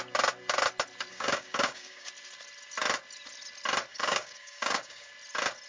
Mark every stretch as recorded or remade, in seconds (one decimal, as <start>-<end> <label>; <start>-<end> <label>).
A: 0.0-1.1 recorded; 1.1-2.1 remade; 2.1-3.9 recorded; 3.9-5.1 remade; 5.1-5.7 recorded